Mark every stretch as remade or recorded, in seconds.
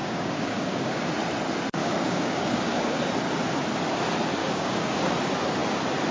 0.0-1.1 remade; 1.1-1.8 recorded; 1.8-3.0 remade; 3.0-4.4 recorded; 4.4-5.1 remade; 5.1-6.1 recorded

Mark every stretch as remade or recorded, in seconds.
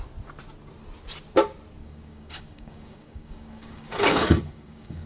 0.0-1.8 recorded; 1.8-5.1 remade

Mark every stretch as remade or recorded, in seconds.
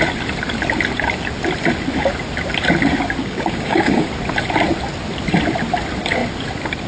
0.0-3.2 recorded; 3.2-4.1 remade; 4.1-6.9 recorded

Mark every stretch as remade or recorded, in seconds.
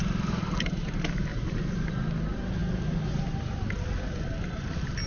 0.0-5.1 recorded